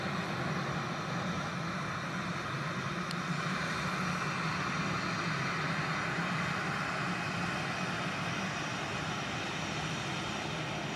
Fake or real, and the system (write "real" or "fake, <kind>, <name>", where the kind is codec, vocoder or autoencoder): real